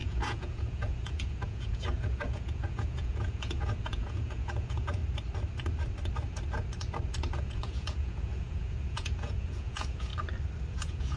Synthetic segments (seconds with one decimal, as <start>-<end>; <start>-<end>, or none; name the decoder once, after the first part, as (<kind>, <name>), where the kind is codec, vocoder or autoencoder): 0.0-5.0 (vocoder, Vocos); 7.4-10.1; 10.7-11.2